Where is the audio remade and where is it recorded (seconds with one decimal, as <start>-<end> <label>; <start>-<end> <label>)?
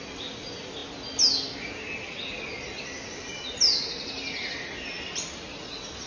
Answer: 0.0-6.1 recorded